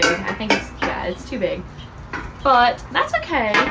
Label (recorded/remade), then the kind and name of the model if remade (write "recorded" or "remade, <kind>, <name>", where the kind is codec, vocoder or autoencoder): recorded